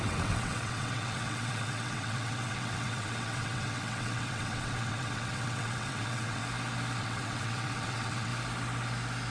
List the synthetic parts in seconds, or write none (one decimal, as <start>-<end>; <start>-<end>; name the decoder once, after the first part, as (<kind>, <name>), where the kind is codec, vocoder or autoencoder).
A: 0.0-6.4 (vocoder, WaveNeXt); 7.0-8.3